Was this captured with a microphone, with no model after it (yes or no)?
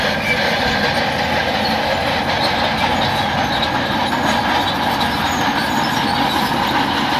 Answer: yes